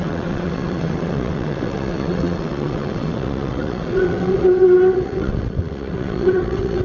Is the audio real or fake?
fake